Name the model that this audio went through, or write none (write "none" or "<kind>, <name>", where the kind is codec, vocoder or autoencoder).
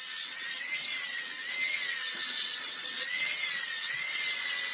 vocoder, WaveNeXt